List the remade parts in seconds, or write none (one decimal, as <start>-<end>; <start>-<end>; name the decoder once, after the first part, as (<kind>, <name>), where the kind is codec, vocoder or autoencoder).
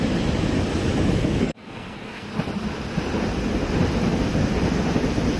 1.2-2.3 (codec, SNAC)